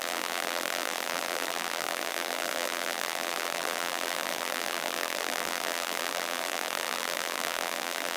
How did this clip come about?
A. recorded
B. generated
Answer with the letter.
B